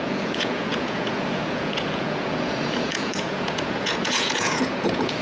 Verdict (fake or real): fake